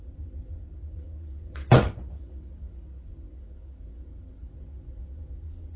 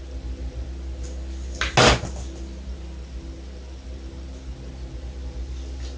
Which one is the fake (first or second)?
first